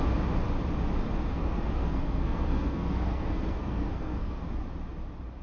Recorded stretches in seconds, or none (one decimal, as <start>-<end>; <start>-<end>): 0.0-1.3; 4.4-5.4